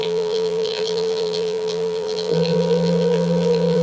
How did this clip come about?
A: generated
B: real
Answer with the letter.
A